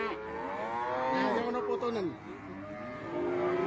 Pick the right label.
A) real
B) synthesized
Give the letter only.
A